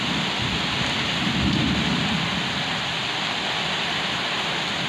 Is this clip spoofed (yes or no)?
no